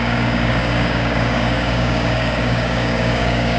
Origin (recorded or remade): remade